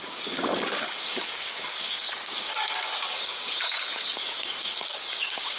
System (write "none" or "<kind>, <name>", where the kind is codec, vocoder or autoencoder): codec, DAC